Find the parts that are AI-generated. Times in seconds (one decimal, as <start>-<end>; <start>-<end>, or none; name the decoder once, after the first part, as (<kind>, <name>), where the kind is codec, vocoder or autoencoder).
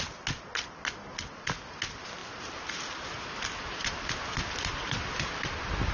none